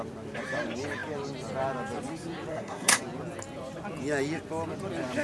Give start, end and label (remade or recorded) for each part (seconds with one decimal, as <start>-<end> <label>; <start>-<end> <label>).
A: 0.0-2.5 recorded; 2.5-3.0 remade; 3.0-5.2 recorded